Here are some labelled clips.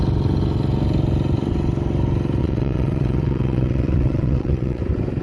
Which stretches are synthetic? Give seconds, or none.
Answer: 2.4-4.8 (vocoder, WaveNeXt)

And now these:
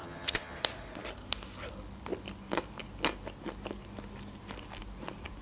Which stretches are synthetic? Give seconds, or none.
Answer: 0.0-0.6 (vocoder, HiFi-GAN)

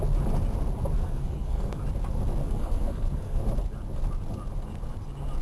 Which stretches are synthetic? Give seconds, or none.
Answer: 1.0-1.8 (codec, SNAC); 2.4-3.4

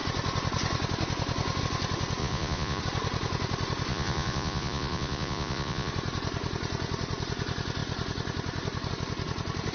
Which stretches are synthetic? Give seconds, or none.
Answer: 2.2-2.8 (vocoder, Vocos); 3.9-5.9

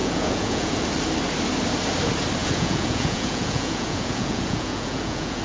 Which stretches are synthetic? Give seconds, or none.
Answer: 0.0-0.7 (vocoder, Vocos); 2.4-5.4

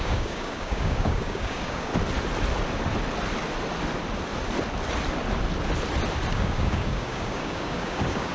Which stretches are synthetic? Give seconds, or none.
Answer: 0.0-1.9 (codec, DAC); 6.3-8.3